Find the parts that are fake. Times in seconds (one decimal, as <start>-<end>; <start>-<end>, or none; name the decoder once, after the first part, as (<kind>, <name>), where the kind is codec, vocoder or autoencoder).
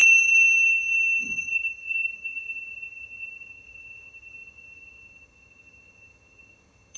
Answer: 1.2-7.0 (vocoder, HiFi-GAN)